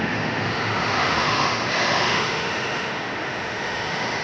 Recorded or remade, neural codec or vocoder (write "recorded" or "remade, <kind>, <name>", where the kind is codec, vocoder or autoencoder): remade, autoencoder, DAC-VAE